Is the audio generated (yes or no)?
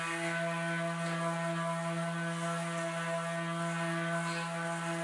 no